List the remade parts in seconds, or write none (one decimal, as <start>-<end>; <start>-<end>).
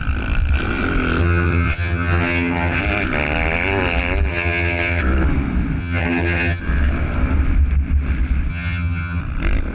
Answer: 1.2-2.8; 4.3-5.0; 5.8-6.6; 8.5-9.2